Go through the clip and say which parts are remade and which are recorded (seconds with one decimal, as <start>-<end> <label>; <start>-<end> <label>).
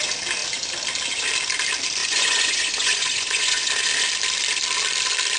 0.0-2.0 recorded; 2.0-3.7 remade; 3.7-5.4 recorded